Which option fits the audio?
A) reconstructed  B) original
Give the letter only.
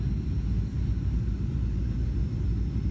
B